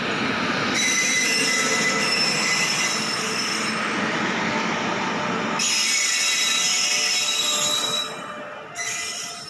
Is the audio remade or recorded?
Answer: recorded